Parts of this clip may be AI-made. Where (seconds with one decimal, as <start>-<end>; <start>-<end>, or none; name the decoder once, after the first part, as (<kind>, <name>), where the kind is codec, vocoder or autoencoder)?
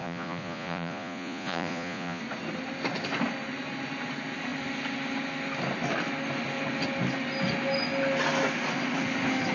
0.0-2.2 (vocoder, Vocos)